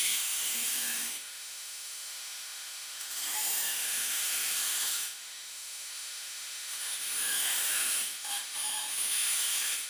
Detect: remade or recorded remade